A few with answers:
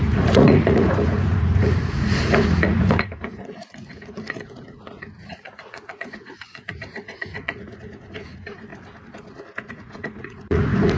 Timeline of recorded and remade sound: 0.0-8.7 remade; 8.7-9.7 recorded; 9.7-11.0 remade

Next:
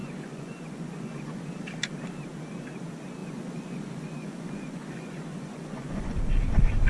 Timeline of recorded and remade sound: 0.0-1.4 remade; 1.4-3.2 recorded; 3.2-6.2 remade; 6.2-6.9 recorded

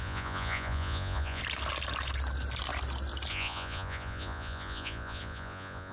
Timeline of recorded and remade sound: 0.0-1.4 remade; 1.4-3.3 recorded; 3.3-5.9 remade

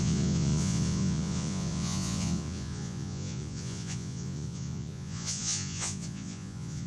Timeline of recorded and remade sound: 0.0-6.9 remade

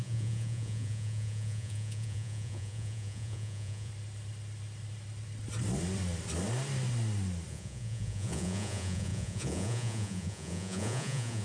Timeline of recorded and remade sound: 0.0-3.9 remade; 3.9-7.5 recorded; 7.5-11.4 remade